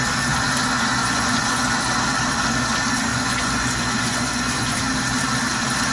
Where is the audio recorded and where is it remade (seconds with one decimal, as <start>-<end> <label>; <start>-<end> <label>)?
0.0-1.0 recorded; 1.0-1.6 remade; 1.6-3.1 recorded; 3.1-4.8 remade; 4.8-5.9 recorded